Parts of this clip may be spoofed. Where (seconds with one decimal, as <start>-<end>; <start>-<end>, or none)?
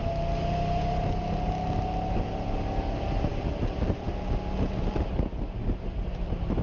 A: none